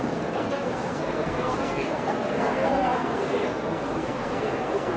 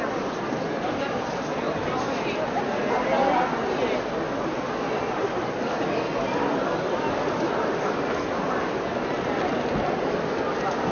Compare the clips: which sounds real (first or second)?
second